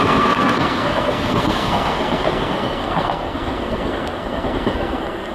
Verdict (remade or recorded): remade